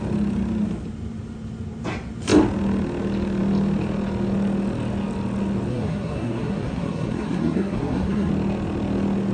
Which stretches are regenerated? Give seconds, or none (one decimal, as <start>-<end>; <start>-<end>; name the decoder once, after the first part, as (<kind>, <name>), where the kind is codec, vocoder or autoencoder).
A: 5.7-8.3 (codec, SNAC)